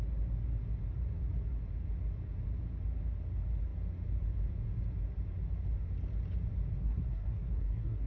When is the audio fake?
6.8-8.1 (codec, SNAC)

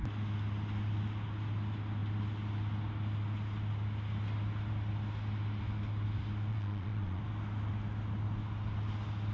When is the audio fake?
6.5-7.2 (vocoder, Vocos)

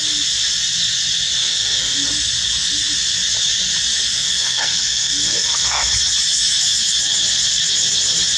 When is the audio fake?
1.4-2.1 (codec, SNAC); 4.1-5.9

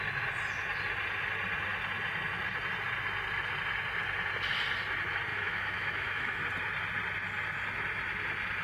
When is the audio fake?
5.3-6.4 (autoencoder, DAC-VAE)

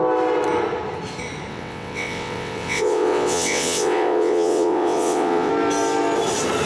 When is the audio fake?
1.5-5.5 (vocoder, WaveNeXt)

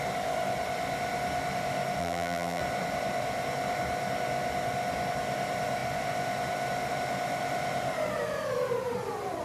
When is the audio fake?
2.0-2.6 (vocoder, BigVGAN v2)